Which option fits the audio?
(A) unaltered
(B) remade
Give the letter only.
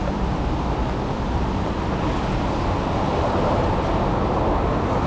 A